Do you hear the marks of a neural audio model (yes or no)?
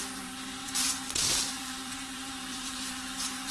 yes